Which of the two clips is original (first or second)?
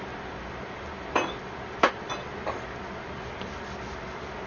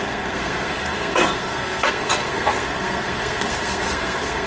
first